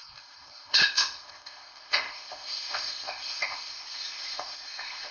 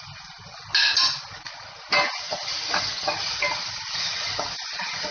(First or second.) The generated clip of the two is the first